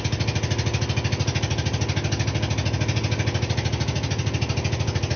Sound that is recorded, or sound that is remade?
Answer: recorded